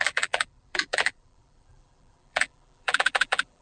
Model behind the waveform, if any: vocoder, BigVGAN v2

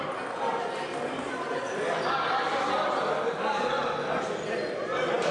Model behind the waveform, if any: none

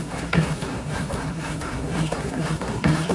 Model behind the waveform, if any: codec, SNAC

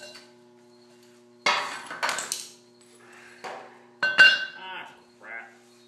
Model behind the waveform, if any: none